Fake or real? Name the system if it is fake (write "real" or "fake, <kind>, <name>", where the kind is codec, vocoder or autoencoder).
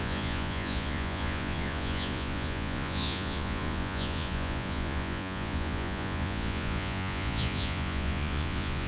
fake, vocoder, Vocos